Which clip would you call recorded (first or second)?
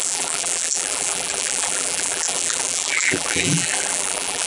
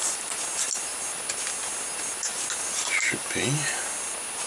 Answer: second